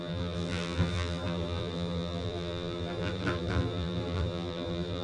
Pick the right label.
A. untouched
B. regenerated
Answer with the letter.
B